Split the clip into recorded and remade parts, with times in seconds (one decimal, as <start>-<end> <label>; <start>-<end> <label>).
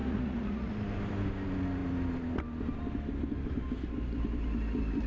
0.0-0.7 remade; 0.7-5.1 recorded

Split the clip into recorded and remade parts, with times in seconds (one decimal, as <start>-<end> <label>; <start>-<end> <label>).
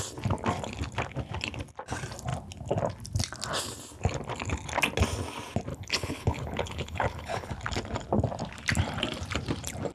0.0-5.7 recorded; 5.7-7.5 remade; 7.5-9.9 recorded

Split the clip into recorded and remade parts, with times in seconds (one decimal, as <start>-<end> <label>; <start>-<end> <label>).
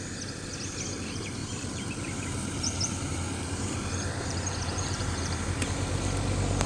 0.0-1.4 recorded; 1.4-5.4 remade; 5.4-6.7 recorded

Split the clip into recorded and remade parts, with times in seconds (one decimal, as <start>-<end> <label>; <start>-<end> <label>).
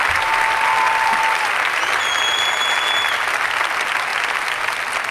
0.0-5.1 recorded